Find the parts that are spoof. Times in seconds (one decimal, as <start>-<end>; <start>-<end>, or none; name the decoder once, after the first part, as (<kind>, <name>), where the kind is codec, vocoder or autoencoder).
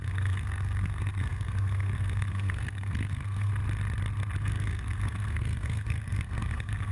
0.0-3.5 (codec, SNAC); 4.4-6.9